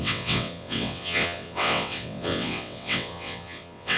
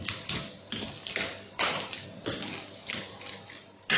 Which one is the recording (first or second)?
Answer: second